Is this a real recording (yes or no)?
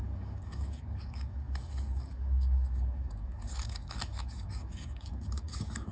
no